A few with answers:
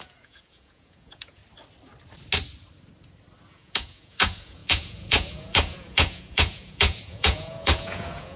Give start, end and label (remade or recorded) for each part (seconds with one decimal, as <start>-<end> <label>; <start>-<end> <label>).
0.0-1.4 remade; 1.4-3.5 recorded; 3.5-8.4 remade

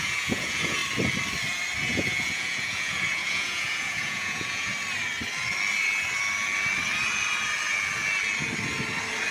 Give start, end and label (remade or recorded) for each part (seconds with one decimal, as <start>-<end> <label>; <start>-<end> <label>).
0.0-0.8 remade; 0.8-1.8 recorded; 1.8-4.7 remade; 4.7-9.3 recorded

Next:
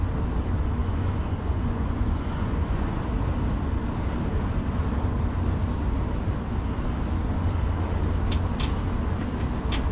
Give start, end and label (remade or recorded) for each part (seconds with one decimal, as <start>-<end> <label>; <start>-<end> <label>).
0.0-0.8 recorded; 0.8-3.0 remade; 3.0-9.9 recorded

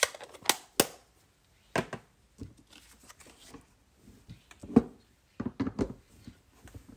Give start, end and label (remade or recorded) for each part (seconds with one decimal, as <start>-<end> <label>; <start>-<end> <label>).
0.0-7.0 recorded

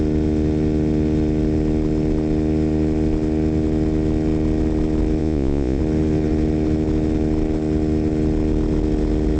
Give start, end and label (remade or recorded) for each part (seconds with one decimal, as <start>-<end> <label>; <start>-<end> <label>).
0.0-5.2 recorded; 5.2-5.8 remade; 5.8-9.4 recorded

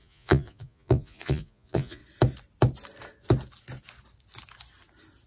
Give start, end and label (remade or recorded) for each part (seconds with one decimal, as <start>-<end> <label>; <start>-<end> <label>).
0.0-2.0 remade; 2.0-5.3 recorded

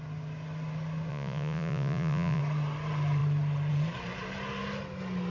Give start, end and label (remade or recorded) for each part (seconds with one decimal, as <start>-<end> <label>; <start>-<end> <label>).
0.0-1.1 recorded; 1.1-2.4 remade; 2.4-5.3 recorded